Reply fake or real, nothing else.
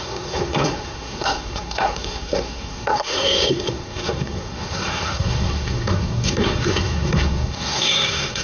fake